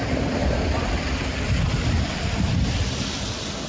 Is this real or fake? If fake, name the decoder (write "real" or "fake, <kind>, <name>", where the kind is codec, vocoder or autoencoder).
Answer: fake, vocoder, BigVGAN v2